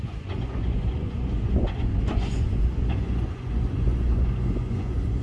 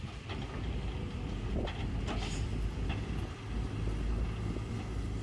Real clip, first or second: second